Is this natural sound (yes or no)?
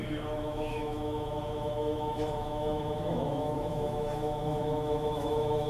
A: no